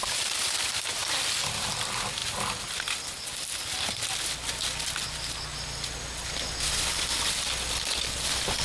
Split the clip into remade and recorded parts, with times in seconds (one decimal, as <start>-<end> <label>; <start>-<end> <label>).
0.0-1.0 recorded; 1.0-1.7 remade; 1.7-8.6 recorded